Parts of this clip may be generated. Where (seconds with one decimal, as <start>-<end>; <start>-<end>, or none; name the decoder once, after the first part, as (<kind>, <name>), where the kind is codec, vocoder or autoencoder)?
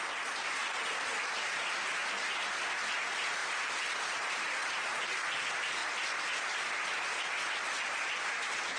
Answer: 0.6-1.5 (vocoder, BigVGAN v2); 3.4-4.9; 5.8-6.6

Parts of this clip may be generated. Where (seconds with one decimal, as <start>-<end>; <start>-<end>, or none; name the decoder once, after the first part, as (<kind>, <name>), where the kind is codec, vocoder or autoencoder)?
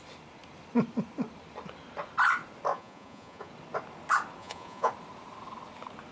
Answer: 2.7-3.5 (vocoder, Vocos); 4.4-4.9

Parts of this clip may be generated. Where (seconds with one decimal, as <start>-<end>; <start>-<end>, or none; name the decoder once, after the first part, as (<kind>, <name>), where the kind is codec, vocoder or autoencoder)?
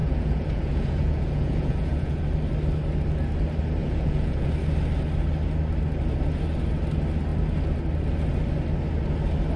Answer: 0.0-2.2 (vocoder, Vocos); 3.8-4.5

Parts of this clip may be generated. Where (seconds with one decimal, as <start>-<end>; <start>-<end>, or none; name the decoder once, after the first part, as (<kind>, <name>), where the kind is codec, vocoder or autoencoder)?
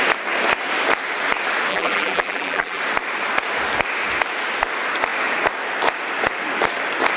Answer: 1.7-2.8 (vocoder, BigVGAN v2)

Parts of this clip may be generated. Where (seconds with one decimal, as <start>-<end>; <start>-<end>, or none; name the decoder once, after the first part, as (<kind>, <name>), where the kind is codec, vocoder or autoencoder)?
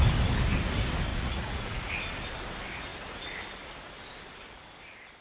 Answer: 1.1-1.9 (vocoder, Vocos)